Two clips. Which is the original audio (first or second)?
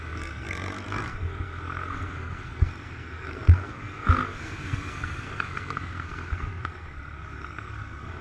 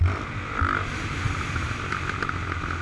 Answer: second